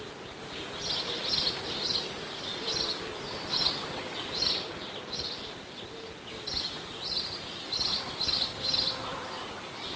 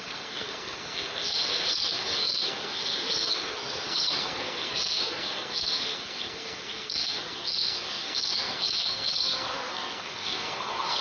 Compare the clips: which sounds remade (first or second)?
second